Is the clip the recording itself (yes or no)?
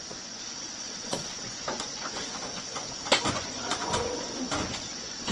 no